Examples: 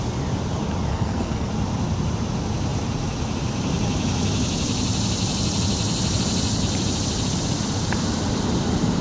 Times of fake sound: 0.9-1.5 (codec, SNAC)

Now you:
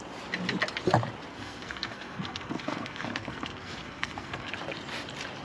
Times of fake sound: 1.3-4.5 (codec, SNAC)

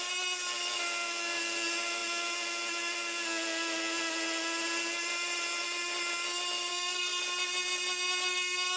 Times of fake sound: 6.7-7.2 (codec, SNAC); 8.3-8.8

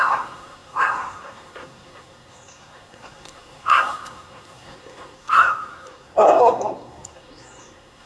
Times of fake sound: 0.0-8.1 (codec, SNAC)

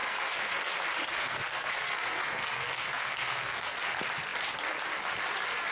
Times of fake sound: 0.0-0.7 (codec, SNAC); 1.1-3.8

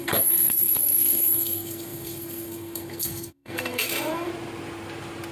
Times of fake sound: 0.0-4.3 (codec, SNAC)